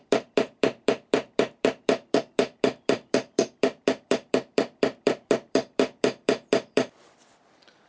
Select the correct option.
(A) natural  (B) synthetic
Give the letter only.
B